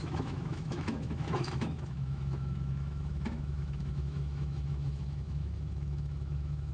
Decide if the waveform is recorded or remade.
remade